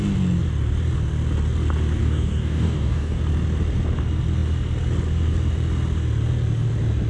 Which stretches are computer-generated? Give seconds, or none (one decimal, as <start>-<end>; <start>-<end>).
2.0-3.2